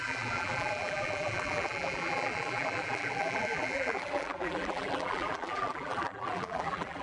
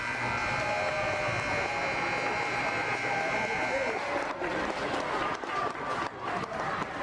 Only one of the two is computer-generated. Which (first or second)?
first